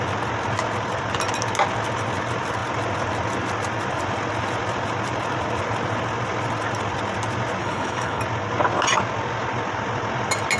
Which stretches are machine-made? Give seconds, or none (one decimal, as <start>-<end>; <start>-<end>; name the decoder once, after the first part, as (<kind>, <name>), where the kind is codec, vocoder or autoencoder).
7.6-8.2 (codec, HILCodec)